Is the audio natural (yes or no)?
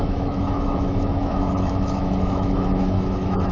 no